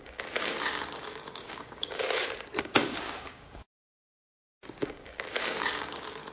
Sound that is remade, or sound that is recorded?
remade